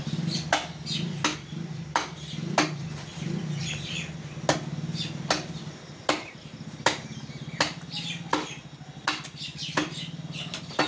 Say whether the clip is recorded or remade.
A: recorded